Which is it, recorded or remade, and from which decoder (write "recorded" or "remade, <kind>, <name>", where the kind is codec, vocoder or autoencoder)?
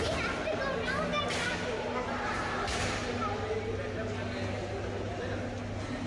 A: recorded